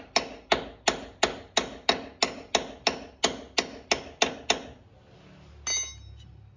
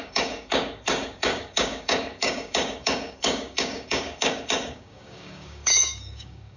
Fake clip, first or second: second